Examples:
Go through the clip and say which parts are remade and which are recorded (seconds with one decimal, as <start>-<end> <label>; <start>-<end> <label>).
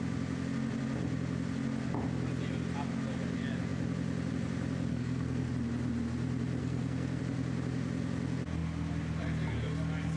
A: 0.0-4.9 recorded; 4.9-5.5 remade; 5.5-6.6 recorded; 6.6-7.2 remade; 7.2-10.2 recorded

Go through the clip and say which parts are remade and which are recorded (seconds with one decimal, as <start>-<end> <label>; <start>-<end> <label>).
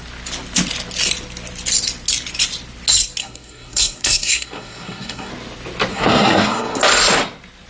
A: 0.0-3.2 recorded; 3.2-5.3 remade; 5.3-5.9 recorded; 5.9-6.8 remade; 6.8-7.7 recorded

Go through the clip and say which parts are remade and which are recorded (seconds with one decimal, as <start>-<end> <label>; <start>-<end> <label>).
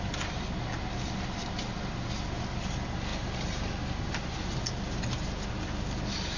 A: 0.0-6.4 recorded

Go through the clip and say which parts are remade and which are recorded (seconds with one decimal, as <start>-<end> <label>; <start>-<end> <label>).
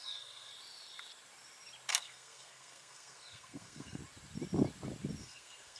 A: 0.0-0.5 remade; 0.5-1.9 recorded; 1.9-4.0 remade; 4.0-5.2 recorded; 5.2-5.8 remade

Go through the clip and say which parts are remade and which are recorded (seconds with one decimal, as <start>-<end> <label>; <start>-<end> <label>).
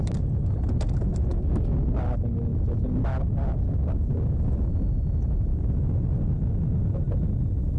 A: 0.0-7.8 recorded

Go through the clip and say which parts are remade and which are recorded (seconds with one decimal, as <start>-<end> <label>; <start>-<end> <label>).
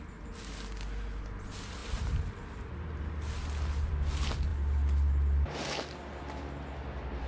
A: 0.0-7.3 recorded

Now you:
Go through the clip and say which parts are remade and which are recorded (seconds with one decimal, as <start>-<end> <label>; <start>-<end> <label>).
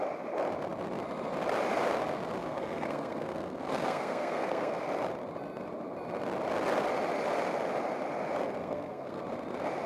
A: 0.0-2.4 recorded; 2.4-4.9 remade; 4.9-8.6 recorded; 8.6-9.2 remade; 9.2-9.9 recorded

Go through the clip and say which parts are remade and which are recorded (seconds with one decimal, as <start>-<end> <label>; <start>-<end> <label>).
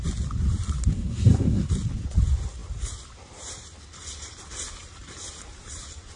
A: 0.0-0.9 recorded; 0.9-1.7 remade; 1.7-6.2 recorded